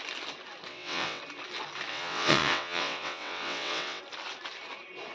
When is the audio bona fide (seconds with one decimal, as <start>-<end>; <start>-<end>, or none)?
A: 0.0-0.7; 1.2-1.9; 4.0-5.1